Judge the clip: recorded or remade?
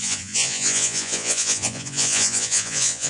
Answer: remade